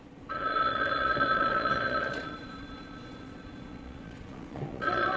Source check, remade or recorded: remade